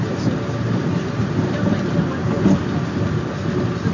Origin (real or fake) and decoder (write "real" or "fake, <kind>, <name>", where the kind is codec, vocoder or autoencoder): real